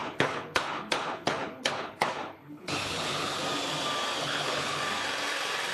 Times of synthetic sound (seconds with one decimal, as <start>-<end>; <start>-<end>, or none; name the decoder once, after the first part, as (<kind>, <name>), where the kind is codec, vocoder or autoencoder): 0.0-3.4 (codec, HILCodec); 4.2-4.8